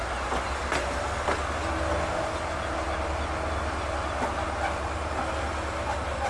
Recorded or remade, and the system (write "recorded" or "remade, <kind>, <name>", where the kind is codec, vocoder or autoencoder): recorded